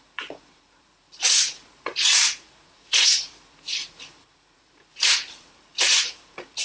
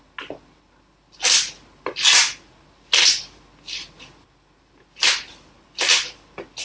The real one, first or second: second